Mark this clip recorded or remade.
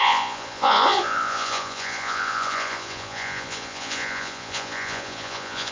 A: remade